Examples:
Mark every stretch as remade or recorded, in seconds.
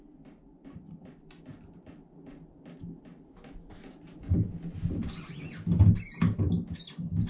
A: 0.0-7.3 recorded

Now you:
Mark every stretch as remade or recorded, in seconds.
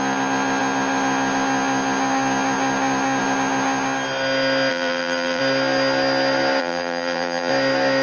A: 0.0-4.7 recorded; 4.7-5.4 remade; 5.4-6.6 recorded; 6.6-7.5 remade; 7.5-8.0 recorded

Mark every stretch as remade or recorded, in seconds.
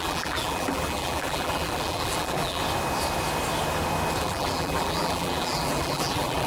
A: 0.0-2.6 remade; 2.6-4.2 recorded; 4.2-6.5 remade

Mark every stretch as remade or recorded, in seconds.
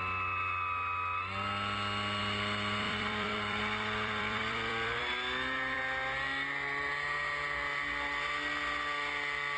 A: 0.0-2.2 recorded; 2.2-5.8 remade; 5.8-9.6 recorded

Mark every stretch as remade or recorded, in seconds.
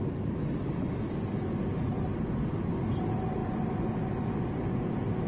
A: 0.0-5.3 recorded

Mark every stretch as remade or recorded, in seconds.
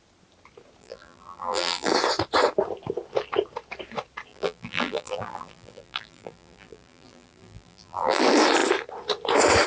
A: 0.0-0.8 recorded; 0.8-1.9 remade; 1.9-4.3 recorded; 4.3-8.2 remade; 8.2-9.7 recorded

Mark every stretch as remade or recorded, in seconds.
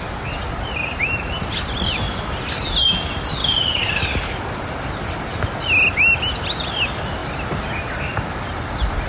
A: 0.0-3.4 recorded; 3.4-4.0 remade; 4.0-7.2 recorded; 7.2-7.8 remade; 7.8-9.1 recorded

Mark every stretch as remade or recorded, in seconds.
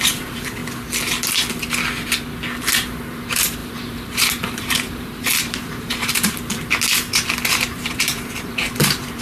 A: 0.0-0.6 remade; 0.6-2.6 recorded; 2.6-6.5 remade; 6.5-7.5 recorded; 7.5-9.2 remade